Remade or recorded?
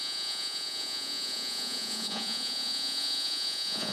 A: remade